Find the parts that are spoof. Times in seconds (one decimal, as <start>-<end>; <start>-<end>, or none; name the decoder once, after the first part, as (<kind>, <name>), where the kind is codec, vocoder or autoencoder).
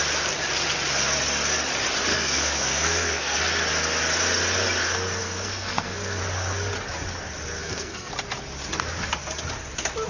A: 2.1-3.4 (codec, SNAC); 5.2-6.2; 7.6-8.1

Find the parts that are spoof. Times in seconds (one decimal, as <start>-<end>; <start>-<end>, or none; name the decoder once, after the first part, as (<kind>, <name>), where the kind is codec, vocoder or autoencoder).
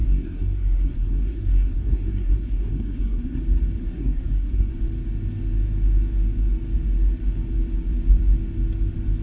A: 0.0-3.4 (codec, SNAC); 3.8-4.7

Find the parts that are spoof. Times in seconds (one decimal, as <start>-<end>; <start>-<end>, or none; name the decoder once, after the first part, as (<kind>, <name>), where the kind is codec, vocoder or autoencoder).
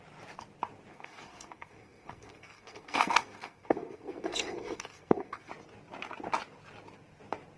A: 0.9-5.5 (codec, SNAC)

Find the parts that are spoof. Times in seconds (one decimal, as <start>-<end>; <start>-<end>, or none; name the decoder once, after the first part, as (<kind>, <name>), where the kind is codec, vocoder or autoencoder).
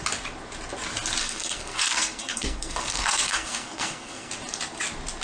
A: 1.2-4.3 (codec, SNAC)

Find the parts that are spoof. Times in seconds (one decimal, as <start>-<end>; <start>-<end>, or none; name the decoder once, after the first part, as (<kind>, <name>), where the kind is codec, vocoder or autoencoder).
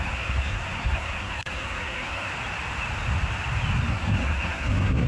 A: 0.0-2.3 (codec, SNAC); 3.9-5.1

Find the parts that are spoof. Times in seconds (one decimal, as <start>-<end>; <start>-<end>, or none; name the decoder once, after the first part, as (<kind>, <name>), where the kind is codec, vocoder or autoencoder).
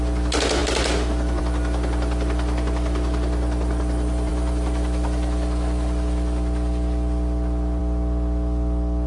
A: none